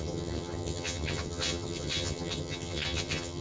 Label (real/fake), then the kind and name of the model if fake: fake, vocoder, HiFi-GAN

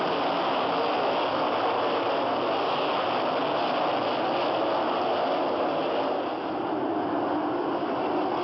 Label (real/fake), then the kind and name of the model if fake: real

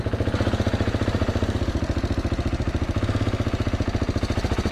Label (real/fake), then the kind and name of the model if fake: real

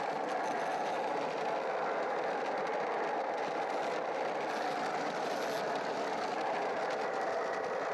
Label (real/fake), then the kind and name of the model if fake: real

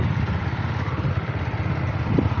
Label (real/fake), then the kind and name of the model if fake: real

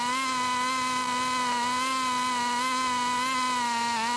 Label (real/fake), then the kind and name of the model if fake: real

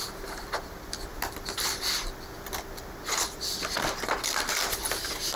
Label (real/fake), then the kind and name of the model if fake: real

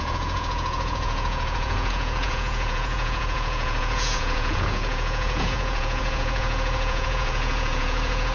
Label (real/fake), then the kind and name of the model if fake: fake, vocoder, Vocos